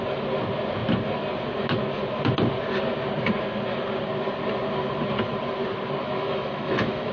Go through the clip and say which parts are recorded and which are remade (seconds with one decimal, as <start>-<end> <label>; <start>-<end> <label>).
0.0-6.0 recorded; 6.0-7.1 remade